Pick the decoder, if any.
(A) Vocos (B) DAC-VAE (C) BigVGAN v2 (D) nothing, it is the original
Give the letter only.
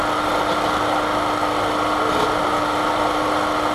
D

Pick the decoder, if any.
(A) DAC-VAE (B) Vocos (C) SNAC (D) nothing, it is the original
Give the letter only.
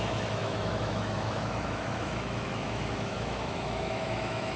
A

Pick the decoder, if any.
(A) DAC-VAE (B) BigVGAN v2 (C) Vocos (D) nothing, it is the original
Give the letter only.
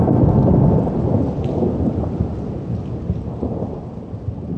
D